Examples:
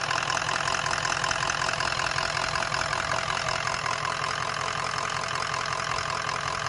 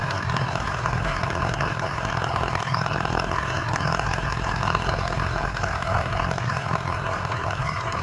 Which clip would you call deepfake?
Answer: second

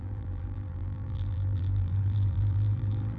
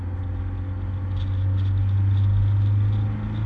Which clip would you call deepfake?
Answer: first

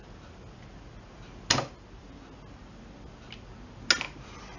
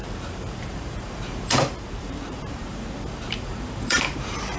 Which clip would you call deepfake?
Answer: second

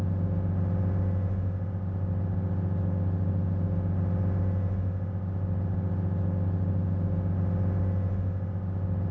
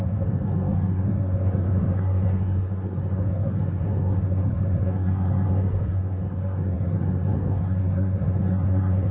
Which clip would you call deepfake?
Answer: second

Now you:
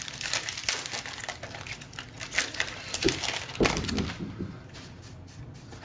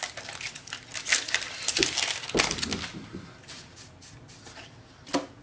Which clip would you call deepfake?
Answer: first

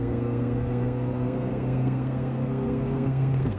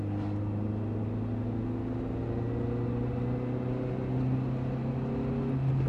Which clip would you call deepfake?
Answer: first